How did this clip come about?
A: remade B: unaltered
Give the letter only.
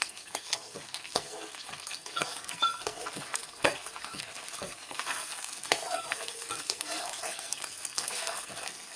A